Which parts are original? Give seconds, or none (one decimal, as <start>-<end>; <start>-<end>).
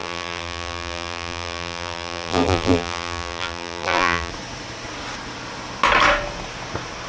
4.3-7.1